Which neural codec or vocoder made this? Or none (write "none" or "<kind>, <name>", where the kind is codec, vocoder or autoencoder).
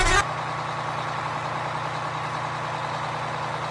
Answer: none